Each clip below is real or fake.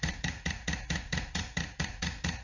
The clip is fake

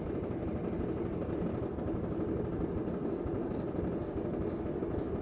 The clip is real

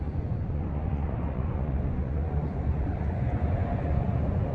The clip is fake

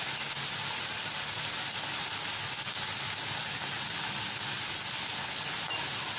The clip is real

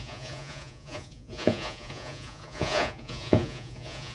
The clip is fake